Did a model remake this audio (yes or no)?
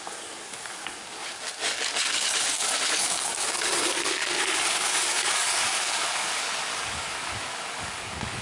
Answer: yes